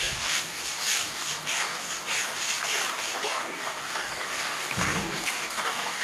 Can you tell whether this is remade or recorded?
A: remade